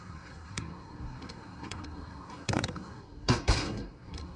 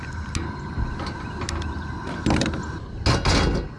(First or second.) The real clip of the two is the second